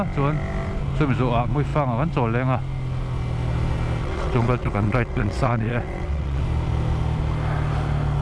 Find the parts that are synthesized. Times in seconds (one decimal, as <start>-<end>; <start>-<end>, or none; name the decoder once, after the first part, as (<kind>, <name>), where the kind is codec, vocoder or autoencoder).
4.0-6.4 (vocoder, WaveNeXt)